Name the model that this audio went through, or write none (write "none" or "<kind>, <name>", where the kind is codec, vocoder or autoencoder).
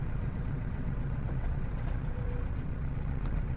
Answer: vocoder, WaveNeXt